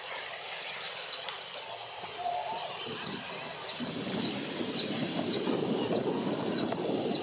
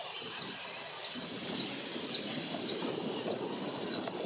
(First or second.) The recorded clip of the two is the first